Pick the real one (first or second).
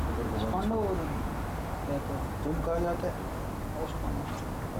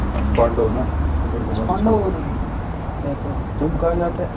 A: first